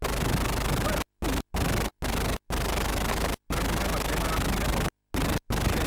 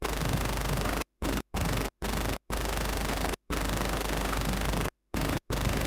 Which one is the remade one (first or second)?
second